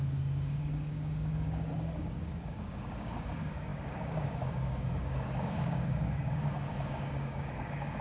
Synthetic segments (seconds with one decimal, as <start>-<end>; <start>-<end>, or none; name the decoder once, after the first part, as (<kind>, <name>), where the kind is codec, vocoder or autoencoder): 0.0-8.0 (codec, DAC)